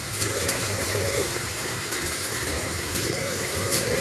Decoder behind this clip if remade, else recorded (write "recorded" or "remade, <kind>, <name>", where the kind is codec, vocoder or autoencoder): remade, codec, SNAC